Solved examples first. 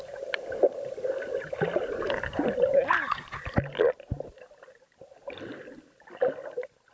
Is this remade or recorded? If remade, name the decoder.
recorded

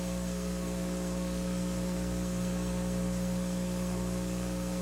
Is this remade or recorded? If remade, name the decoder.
remade, codec, SNAC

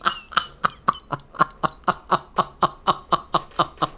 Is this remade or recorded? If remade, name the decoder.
recorded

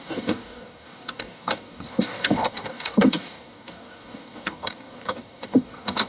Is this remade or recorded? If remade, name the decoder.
remade, codec, DAC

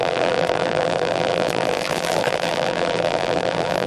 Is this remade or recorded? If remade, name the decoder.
remade, vocoder, BigVGAN v2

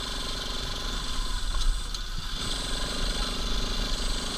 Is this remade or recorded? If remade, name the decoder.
recorded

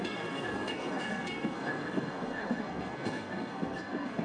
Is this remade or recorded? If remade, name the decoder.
remade, codec, SNAC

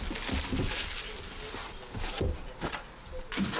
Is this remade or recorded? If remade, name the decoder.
recorded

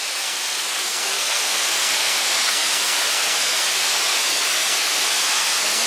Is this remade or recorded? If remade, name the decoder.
remade, codec, SNAC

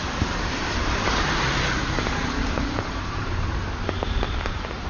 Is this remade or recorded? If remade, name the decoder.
remade, vocoder, BigVGAN v2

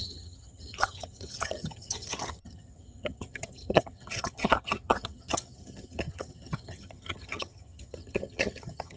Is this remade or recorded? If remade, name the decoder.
remade, vocoder, HiFi-GAN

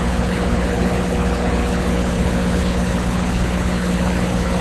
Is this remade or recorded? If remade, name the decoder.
remade, codec, HILCodec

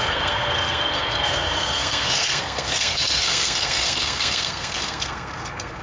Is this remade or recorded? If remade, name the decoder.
remade, codec, SNAC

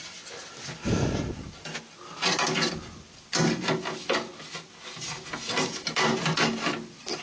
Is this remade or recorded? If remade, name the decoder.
recorded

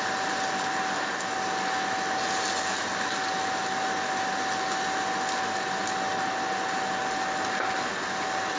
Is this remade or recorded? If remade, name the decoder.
recorded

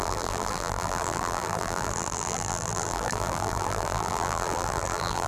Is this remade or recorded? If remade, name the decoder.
remade, vocoder, BigVGAN v2